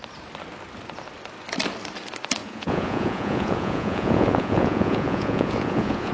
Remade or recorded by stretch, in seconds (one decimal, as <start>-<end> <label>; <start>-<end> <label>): 0.0-2.4 recorded; 2.4-6.1 remade